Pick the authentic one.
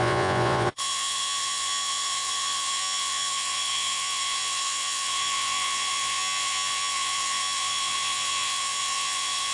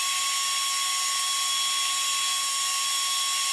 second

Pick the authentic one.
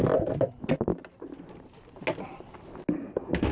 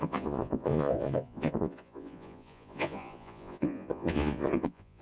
first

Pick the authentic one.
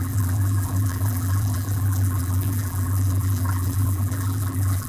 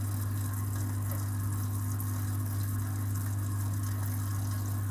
second